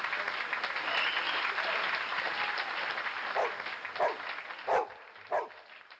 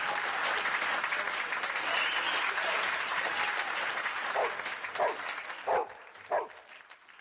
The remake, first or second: second